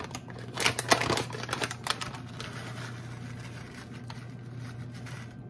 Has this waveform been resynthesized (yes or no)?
no